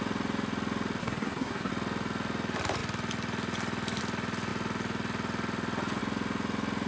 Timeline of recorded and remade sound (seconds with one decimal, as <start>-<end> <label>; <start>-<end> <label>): 0.0-1.0 recorded; 1.0-1.7 remade; 1.7-6.9 recorded